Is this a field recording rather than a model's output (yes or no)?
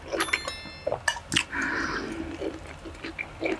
yes